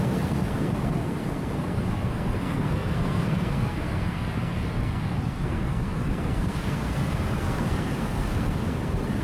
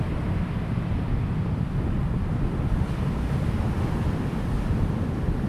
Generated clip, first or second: first